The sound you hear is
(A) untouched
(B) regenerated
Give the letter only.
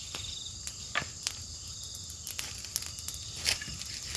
A